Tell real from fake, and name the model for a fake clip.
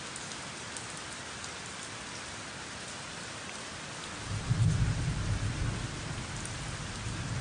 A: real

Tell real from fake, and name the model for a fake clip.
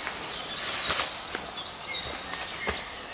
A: real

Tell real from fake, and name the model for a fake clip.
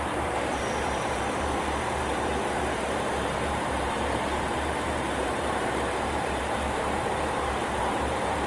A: fake, vocoder, BigVGAN v2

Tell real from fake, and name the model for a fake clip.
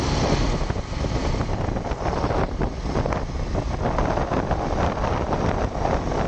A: real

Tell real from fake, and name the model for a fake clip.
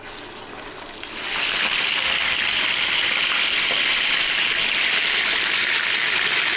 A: real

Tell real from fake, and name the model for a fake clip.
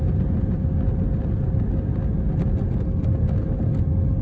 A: real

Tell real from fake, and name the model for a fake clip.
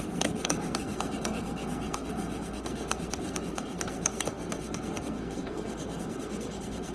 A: fake, codec, SNAC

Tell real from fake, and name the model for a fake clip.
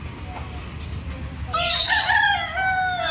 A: real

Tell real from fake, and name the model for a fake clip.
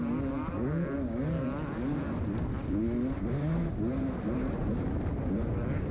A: real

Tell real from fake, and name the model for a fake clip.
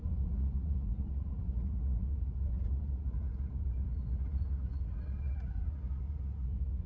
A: fake, vocoder, Vocos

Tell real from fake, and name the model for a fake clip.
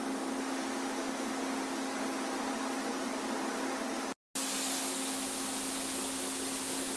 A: real